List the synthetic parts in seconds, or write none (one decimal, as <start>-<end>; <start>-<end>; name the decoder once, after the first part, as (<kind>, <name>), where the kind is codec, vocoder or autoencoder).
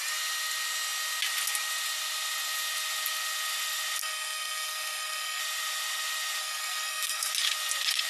4.0-5.4 (codec, SNAC); 6.4-7.3